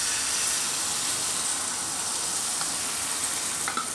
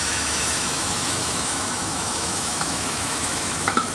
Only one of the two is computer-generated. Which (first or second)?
second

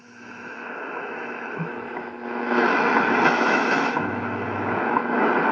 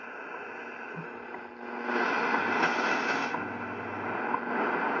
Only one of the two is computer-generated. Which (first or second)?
first